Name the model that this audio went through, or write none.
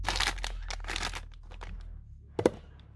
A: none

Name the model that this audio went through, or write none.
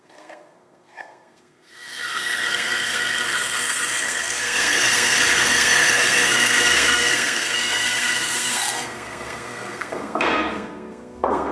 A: codec, SNAC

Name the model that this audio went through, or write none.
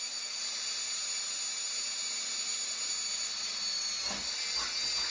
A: none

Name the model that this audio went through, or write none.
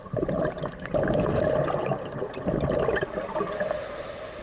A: none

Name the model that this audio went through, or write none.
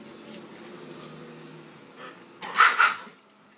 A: none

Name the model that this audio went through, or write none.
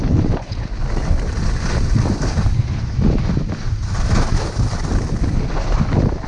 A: none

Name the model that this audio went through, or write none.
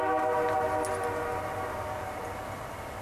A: none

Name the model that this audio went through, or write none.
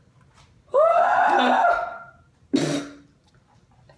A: none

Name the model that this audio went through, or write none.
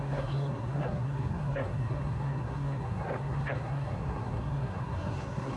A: codec, SNAC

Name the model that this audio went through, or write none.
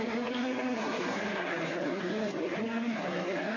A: codec, SNAC